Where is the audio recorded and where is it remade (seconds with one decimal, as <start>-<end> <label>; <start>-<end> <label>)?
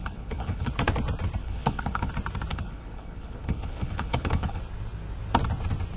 0.0-0.7 remade; 0.7-1.4 recorded; 1.4-2.1 remade; 2.1-2.5 recorded; 2.5-4.6 remade; 4.6-6.0 recorded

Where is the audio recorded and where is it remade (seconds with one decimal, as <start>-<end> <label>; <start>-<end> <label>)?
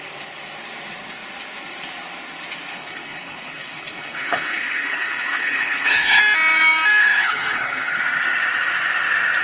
0.0-2.7 recorded; 2.7-6.2 remade; 6.2-7.0 recorded; 7.0-8.0 remade; 8.0-9.4 recorded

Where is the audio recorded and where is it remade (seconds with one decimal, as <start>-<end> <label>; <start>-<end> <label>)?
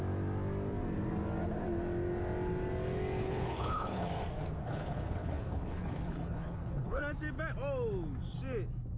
0.0-3.2 recorded; 3.2-4.1 remade; 4.1-4.6 recorded; 4.6-7.0 remade; 7.0-9.0 recorded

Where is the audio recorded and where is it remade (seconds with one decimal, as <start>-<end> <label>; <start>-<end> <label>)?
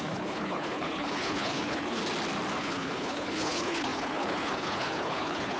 0.0-2.0 remade; 2.0-2.6 recorded; 2.6-5.6 remade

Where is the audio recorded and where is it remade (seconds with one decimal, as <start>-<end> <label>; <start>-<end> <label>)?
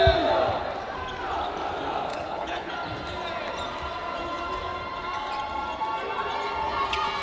0.0-2.1 recorded; 2.1-2.7 remade; 2.7-7.2 recorded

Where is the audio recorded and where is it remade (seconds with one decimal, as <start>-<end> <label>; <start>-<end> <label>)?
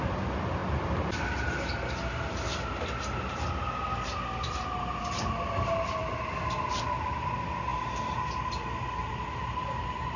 0.0-10.2 recorded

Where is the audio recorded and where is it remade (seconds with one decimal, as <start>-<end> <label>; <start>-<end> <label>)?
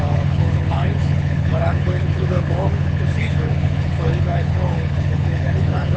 0.0-6.0 remade